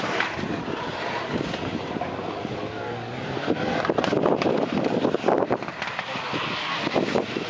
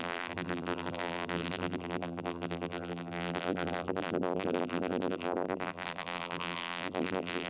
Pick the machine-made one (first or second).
second